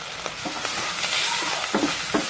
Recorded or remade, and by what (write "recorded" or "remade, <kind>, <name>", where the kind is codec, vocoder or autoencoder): recorded